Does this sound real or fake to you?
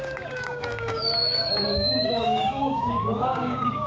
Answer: fake